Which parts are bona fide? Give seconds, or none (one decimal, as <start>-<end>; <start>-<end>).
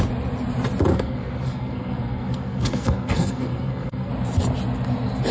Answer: 0.0-0.9; 4.1-5.3